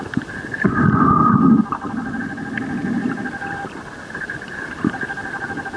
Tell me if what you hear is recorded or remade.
remade